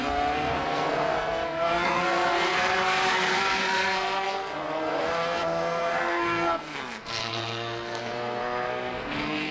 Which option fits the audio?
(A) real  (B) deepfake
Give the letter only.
B